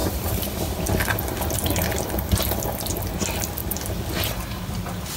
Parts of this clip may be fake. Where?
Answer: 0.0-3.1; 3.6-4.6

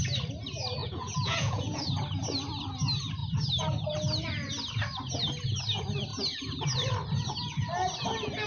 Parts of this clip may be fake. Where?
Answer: 0.8-1.9

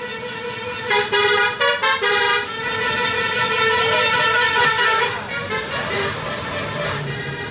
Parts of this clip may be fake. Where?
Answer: 0.0-1.8; 2.5-7.5

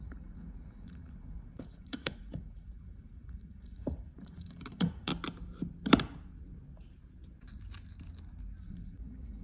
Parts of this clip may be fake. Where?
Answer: 0.0-5.1; 8.6-9.4

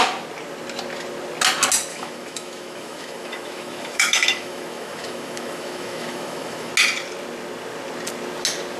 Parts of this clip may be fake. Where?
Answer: 1.9-6.7

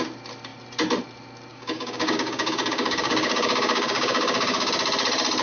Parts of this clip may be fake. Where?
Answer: 1.5-4.7

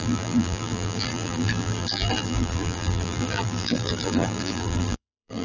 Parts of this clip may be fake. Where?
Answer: 0.0-5.4

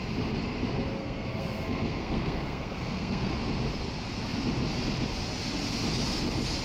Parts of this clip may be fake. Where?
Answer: 1.0-3.3